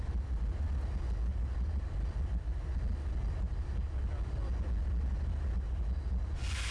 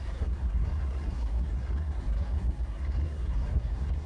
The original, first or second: first